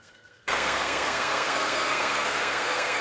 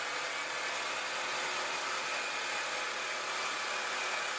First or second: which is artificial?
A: first